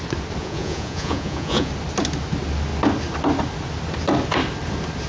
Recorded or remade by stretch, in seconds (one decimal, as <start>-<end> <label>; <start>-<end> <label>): 0.0-0.4 recorded; 0.4-1.7 remade; 1.7-5.1 recorded